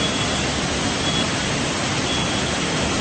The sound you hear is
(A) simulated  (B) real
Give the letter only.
B